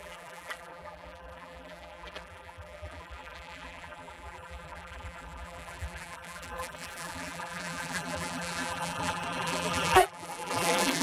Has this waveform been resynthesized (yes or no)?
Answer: yes